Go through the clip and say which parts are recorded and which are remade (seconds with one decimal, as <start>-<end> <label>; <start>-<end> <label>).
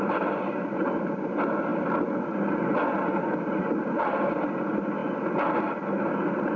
0.0-6.6 recorded